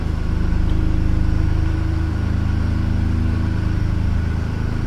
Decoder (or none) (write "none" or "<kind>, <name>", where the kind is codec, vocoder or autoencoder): none